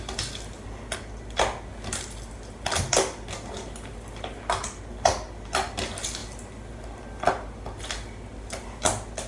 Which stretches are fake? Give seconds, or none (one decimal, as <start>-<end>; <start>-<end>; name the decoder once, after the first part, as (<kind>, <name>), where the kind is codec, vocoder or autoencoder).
none